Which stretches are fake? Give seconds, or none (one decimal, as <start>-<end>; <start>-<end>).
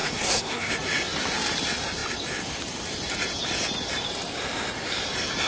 0.0-0.7